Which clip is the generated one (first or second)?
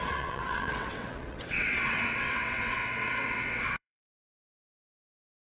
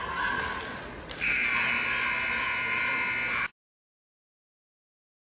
first